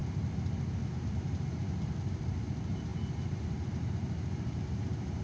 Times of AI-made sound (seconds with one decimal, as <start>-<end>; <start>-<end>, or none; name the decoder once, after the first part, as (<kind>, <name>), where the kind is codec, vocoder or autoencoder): 0.9-5.2 (vocoder, BigVGAN v2)